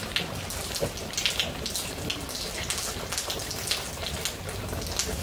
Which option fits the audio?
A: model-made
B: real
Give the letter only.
B